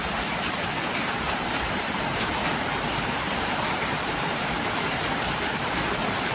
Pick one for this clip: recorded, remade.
remade